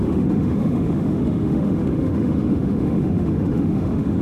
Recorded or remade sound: remade